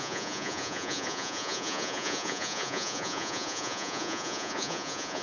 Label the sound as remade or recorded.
remade